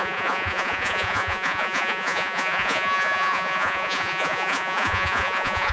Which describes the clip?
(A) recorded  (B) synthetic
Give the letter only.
B